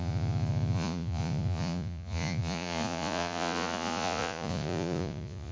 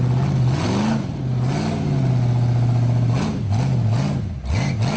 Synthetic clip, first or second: first